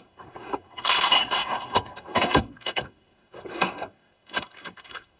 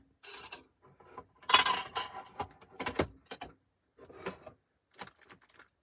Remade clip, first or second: first